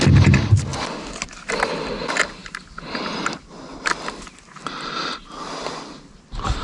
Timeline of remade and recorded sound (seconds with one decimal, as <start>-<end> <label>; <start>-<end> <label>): 0.0-6.6 recorded

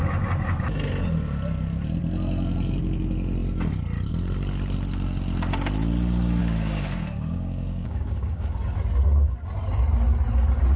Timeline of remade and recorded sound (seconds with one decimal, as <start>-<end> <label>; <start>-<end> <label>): 0.0-6.4 recorded; 6.4-8.5 remade; 8.5-10.8 recorded

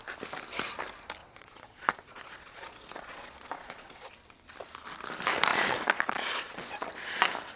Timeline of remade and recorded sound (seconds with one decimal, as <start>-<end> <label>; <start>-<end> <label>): 0.0-1.2 recorded; 1.2-4.1 remade; 4.1-5.5 recorded; 5.5-6.9 remade; 6.9-7.6 recorded

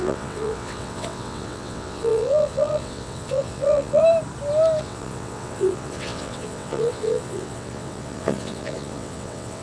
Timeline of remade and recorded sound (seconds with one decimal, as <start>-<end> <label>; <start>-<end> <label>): 0.0-4.0 remade; 4.0-4.8 recorded; 4.8-9.6 remade

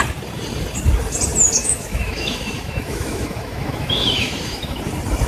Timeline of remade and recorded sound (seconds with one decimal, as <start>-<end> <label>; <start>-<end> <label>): 0.0-1.6 recorded; 1.6-4.8 remade; 4.8-5.3 recorded

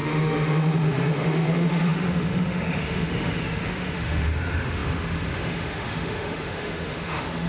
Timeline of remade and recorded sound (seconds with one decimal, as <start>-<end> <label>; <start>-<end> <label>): 0.0-7.5 remade